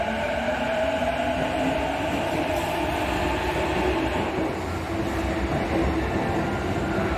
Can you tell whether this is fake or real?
real